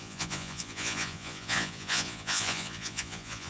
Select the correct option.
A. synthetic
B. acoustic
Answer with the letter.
A